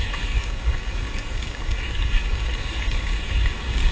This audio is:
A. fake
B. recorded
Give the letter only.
A